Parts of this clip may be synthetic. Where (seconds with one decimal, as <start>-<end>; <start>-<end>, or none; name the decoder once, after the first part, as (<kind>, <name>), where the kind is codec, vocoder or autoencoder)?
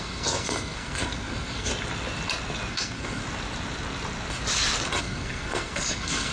0.0-1.7 (codec, SNAC); 2.7-3.2; 5.0-6.3